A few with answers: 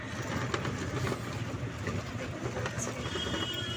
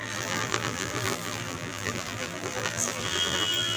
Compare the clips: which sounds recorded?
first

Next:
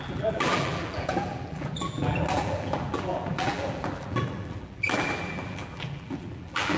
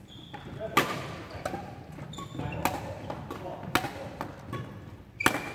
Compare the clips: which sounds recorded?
second